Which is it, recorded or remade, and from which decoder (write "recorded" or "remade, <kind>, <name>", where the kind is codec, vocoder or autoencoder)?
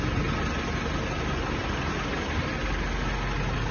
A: recorded